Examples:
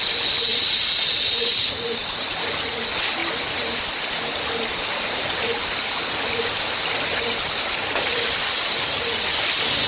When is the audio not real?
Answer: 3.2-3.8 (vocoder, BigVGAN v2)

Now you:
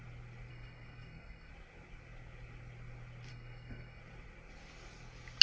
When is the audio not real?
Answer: 0.5-1.5 (codec, SNAC); 3.3-4.0

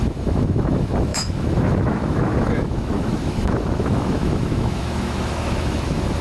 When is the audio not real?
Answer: 0.0-6.2 (autoencoder, DAC-VAE)